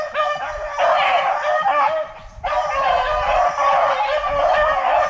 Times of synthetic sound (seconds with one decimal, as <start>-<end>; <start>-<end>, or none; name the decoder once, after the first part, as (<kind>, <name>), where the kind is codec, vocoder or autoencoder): none